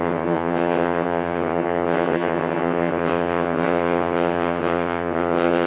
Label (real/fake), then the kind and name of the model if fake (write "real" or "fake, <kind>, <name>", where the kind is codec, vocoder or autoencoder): fake, vocoder, HiFi-GAN